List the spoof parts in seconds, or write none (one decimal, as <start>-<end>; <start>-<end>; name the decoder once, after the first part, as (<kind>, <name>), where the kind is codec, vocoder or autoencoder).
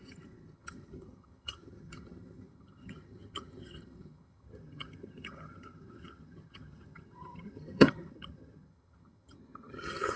0.0-10.2 (vocoder, HiFi-GAN)